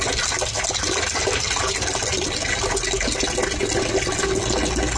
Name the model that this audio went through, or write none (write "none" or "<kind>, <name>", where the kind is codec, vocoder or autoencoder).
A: none